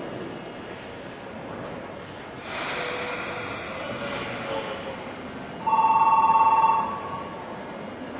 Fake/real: real